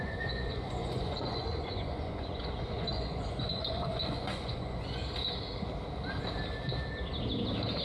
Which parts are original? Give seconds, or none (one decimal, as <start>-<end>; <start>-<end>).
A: 5.0-7.8

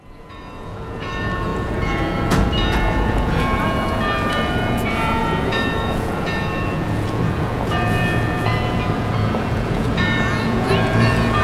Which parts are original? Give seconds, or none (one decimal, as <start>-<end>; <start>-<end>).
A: none

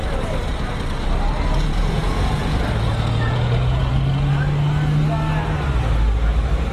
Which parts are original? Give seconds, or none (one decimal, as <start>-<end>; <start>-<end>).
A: 0.0-1.7; 3.9-6.7

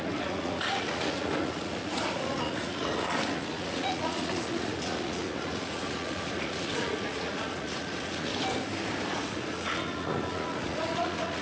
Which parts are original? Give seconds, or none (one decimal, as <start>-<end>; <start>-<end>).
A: 8.3-9.2